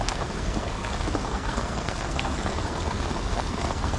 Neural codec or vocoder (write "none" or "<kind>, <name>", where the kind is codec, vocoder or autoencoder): codec, SNAC